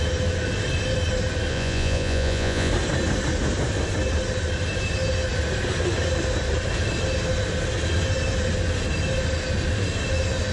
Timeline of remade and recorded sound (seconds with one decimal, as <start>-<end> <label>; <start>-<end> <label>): 0.0-1.5 recorded; 1.5-2.7 remade; 2.7-10.5 recorded